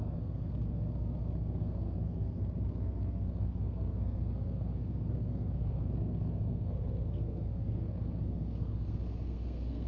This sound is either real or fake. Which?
fake